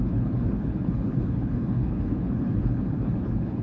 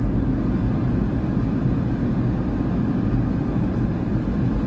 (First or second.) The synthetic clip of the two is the first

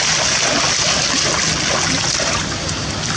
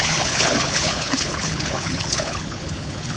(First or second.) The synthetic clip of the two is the second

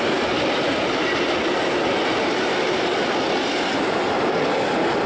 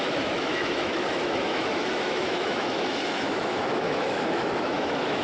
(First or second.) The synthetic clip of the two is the second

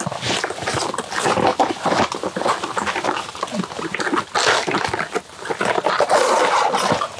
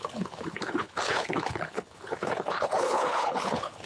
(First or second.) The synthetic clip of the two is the second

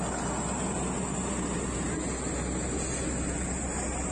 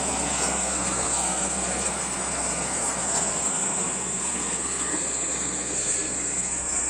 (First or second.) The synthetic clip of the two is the second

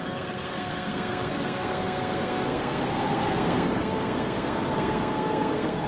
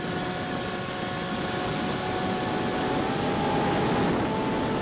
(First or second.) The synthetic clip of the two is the first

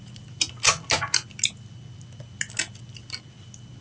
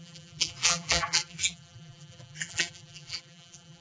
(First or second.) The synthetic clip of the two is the second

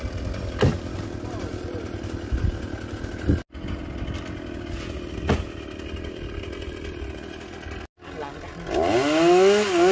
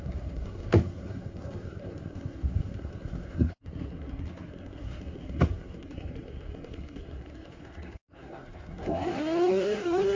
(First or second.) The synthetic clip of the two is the second